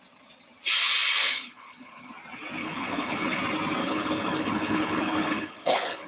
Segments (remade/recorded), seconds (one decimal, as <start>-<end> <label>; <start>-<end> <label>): 0.0-1.2 recorded; 1.2-2.1 remade; 2.1-2.6 recorded; 2.6-3.4 remade; 3.4-3.8 recorded; 3.8-6.1 remade